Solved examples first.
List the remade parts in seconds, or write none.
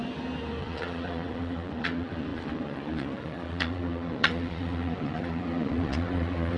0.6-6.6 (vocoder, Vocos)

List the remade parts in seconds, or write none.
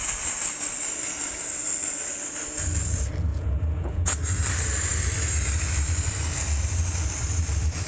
3.3-4.1 (vocoder, Vocos)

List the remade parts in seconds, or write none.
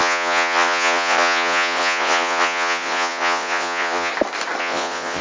0.0-4.1 (vocoder, Vocos); 4.6-5.2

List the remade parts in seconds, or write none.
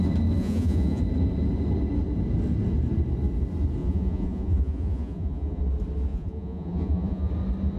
0.4-1.0 (vocoder, Vocos); 3.8-5.6; 6.1-7.3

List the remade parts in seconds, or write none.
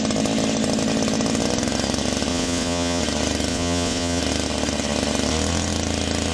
2.3-3.0 (vocoder, Vocos); 3.5-4.2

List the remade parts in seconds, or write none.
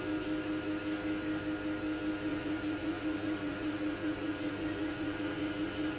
2.3-6.0 (vocoder, Vocos)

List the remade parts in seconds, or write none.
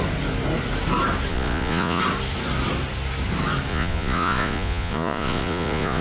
1.3-2.0 (vocoder, Vocos); 3.7-6.0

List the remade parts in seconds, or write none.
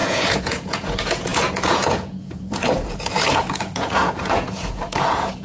0.0-5.4 (vocoder, Vocos)